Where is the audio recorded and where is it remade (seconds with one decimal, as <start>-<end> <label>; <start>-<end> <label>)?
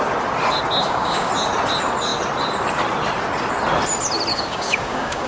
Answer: 0.0-0.8 recorded; 0.8-1.3 remade; 1.3-4.3 recorded; 4.3-5.3 remade